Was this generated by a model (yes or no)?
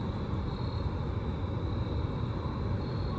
no